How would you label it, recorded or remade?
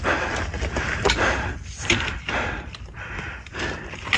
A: recorded